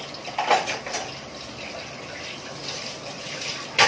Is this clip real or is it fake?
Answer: real